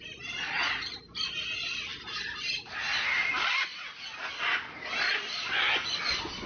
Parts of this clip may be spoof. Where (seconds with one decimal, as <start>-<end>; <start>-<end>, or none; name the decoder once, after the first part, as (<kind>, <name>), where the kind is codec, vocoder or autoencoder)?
none